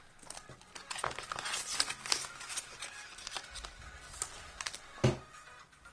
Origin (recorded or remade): recorded